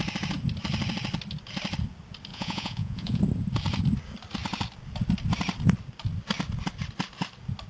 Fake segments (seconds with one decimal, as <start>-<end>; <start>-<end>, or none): 2.3-3.2